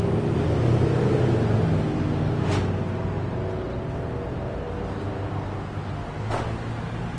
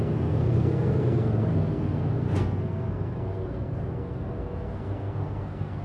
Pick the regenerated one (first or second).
second